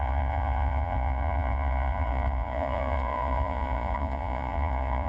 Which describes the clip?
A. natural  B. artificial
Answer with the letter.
B